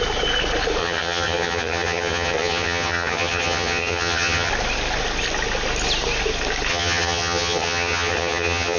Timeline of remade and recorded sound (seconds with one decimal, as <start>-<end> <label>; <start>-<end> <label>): 0.0-0.8 recorded; 0.8-4.5 remade; 4.5-6.7 recorded; 6.7-8.8 remade